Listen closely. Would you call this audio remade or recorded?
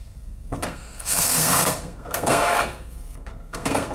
remade